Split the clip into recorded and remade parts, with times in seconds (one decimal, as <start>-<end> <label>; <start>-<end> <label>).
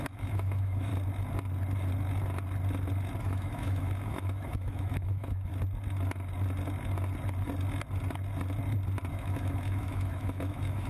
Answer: 0.0-0.9 remade; 0.9-3.2 recorded; 3.2-5.5 remade; 5.5-9.1 recorded; 9.1-10.9 remade